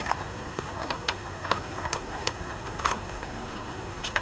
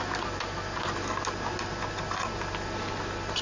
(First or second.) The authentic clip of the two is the second